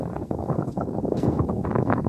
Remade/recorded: remade